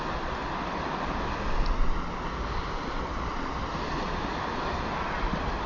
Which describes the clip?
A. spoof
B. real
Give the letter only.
B